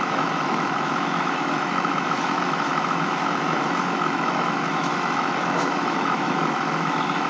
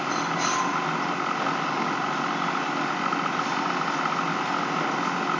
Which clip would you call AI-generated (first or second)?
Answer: first